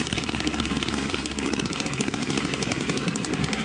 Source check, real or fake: fake